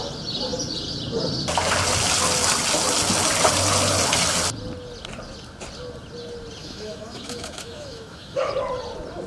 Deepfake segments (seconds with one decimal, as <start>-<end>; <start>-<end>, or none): 6.6-8.5